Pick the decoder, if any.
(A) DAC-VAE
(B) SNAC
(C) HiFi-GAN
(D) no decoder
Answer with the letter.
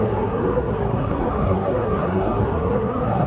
B